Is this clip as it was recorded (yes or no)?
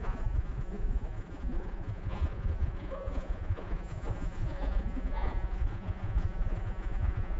no